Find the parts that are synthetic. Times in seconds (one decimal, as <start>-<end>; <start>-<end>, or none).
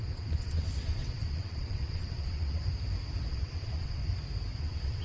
0.0-2.6; 3.3-4.0; 4.6-5.0